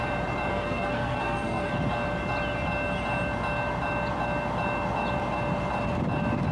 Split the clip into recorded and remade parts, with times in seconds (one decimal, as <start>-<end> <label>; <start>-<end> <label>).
0.0-0.5 recorded; 0.5-1.7 remade; 1.7-6.5 recorded